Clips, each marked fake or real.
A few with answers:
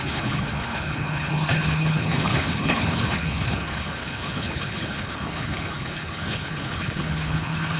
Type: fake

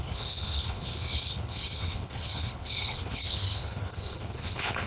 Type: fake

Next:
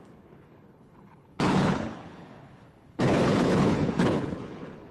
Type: fake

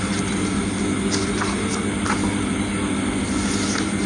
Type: real